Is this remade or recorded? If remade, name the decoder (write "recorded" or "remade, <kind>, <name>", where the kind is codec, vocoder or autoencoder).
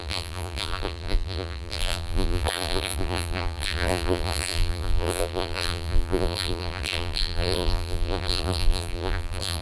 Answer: remade, vocoder, BigVGAN v2